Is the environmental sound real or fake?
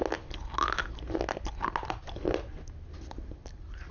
real